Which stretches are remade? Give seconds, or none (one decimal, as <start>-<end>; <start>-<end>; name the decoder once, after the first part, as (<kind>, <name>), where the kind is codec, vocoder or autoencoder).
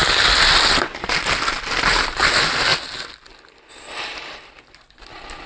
none